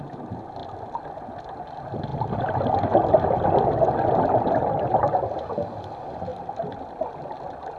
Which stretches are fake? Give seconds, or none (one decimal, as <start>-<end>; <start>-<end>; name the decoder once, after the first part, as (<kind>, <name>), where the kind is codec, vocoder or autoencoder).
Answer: 0.6-1.6 (vocoder, BigVGAN v2); 6.3-7.2